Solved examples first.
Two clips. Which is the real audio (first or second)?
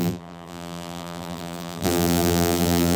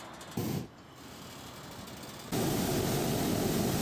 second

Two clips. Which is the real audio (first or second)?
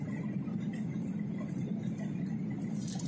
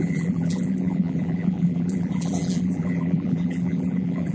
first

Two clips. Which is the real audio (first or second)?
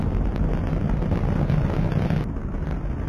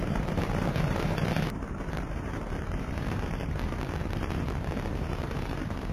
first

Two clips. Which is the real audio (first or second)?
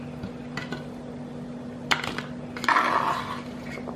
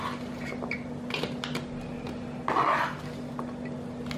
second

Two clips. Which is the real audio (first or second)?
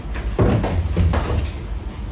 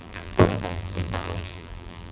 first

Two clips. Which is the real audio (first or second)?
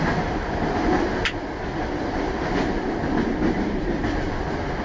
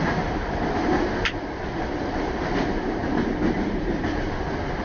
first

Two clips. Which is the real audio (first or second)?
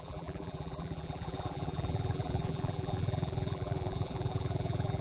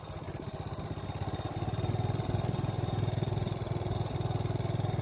second